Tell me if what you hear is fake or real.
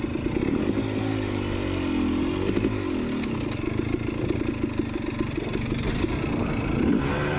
real